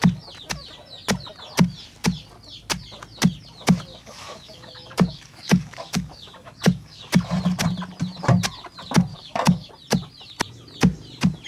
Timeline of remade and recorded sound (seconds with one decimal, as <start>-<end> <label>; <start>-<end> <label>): 0.0-3.9 recorded; 3.9-7.1 remade; 7.1-9.1 recorded; 9.1-9.7 remade; 9.7-11.5 recorded